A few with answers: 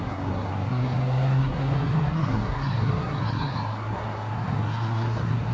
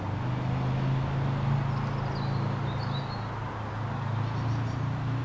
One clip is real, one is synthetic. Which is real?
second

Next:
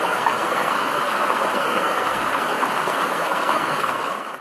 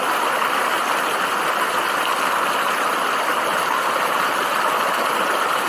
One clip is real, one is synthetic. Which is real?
second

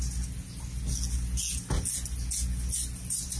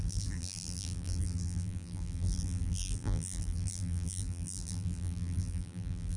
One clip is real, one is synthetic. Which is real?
first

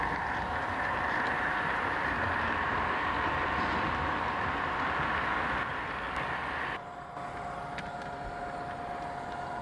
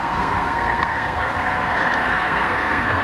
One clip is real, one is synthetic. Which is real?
first